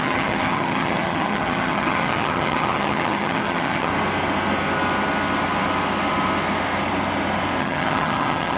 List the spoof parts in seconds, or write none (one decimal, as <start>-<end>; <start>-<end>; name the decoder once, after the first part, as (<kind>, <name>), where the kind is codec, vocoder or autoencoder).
0.0-3.9 (vocoder, HiFi-GAN); 7.6-8.6